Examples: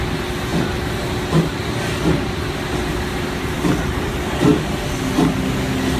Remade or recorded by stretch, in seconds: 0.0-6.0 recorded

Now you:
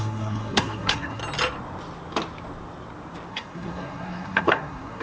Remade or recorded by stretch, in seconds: 0.0-1.2 remade; 1.2-3.3 recorded; 3.3-5.0 remade

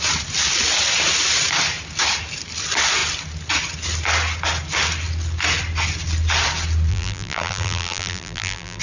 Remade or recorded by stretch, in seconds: 0.0-6.9 recorded; 6.9-8.8 remade

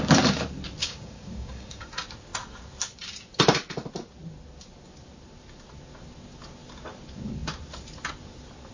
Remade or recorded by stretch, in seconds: 0.0-0.8 recorded; 0.8-1.9 remade; 1.9-8.7 recorded